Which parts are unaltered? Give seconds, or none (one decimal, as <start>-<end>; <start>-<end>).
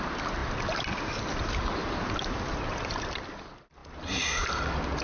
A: 0.0-5.0